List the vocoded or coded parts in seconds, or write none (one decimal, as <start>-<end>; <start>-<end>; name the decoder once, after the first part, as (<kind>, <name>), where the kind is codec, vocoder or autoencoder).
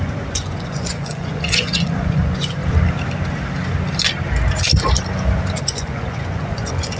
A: 0.0-2.6 (vocoder, Vocos); 5.6-7.0